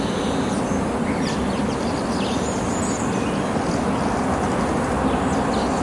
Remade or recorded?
recorded